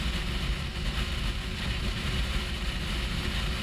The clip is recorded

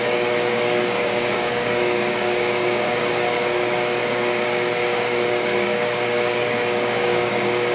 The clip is remade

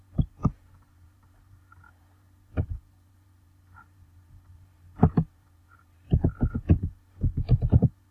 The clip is remade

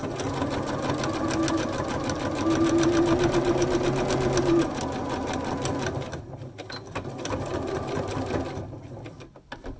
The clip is recorded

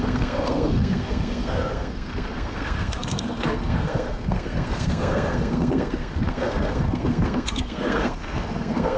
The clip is remade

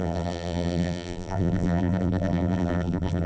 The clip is remade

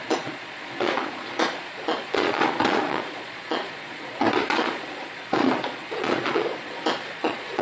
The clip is remade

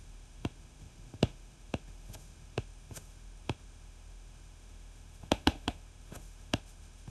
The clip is remade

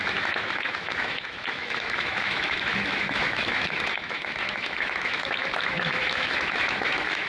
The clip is remade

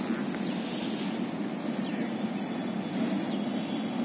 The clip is recorded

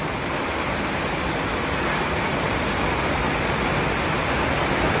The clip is recorded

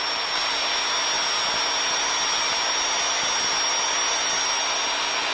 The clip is recorded